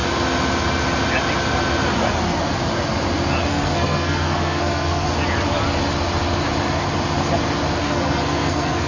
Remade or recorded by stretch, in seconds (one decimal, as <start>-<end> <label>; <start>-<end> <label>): 0.0-3.5 recorded; 3.5-5.1 remade; 5.1-7.8 recorded; 7.8-8.9 remade